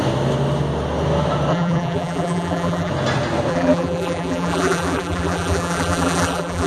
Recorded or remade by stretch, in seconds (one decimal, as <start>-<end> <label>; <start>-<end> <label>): 0.0-1.5 recorded; 1.5-2.9 remade; 2.9-3.5 recorded; 3.5-6.7 remade